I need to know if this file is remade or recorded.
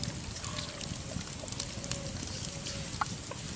recorded